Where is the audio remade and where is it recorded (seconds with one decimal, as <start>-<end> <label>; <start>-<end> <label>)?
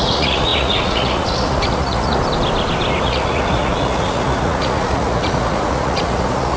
0.0-2.2 remade; 2.2-3.0 recorded; 3.0-6.6 remade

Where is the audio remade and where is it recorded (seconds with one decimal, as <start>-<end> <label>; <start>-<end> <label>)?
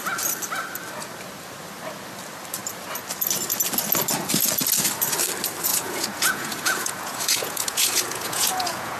0.0-5.7 recorded; 5.7-9.0 remade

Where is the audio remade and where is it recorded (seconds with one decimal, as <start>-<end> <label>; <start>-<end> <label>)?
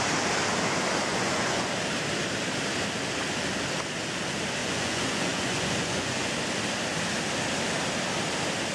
0.0-1.1 recorded; 1.1-1.7 remade; 1.7-4.6 recorded; 4.6-6.3 remade; 6.3-8.7 recorded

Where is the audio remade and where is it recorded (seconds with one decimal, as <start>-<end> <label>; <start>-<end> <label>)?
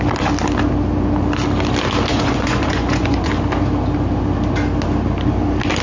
0.0-2.1 recorded; 2.1-3.3 remade; 3.3-5.8 recorded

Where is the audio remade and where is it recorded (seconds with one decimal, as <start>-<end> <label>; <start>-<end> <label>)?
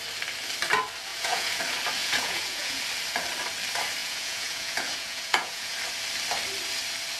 0.0-1.1 recorded; 1.1-1.6 remade; 1.6-2.0 recorded; 2.0-2.8 remade; 2.8-4.0 recorded; 4.0-5.7 remade; 5.7-7.2 recorded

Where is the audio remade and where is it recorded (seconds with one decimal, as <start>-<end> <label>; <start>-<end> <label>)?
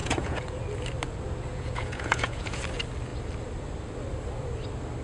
0.0-0.6 remade; 0.6-1.5 recorded; 1.5-2.6 remade; 2.6-5.0 recorded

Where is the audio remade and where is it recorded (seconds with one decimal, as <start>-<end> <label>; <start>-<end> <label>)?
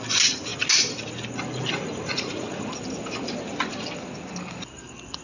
0.0-2.1 recorded; 2.1-2.7 remade; 2.7-5.2 recorded